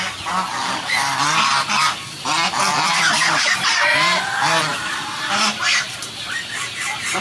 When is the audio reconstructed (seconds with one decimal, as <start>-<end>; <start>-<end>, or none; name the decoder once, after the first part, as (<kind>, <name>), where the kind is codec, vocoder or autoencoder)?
4.7-6.0 (vocoder, BigVGAN v2)